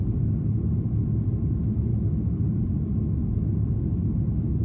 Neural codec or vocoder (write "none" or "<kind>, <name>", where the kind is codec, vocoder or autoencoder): none